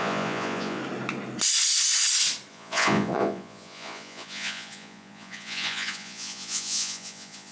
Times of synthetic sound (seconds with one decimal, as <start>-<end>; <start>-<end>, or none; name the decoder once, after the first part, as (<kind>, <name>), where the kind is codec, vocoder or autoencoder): 0.0-0.8 (vocoder, Vocos); 2.5-7.5